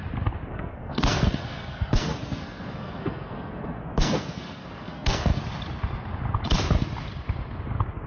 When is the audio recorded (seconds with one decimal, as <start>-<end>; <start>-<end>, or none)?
0.0-0.5; 5.4-8.1